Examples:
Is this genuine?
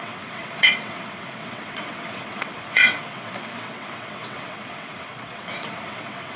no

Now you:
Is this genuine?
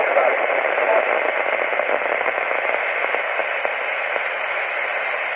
yes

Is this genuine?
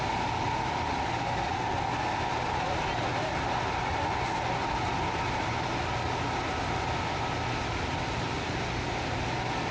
yes